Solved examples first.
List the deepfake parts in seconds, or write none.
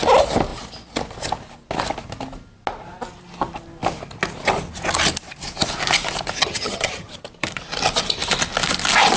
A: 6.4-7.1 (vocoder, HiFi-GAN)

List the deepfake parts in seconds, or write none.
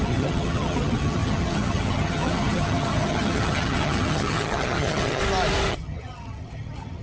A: 0.0-5.2 (vocoder, HiFi-GAN); 5.7-7.0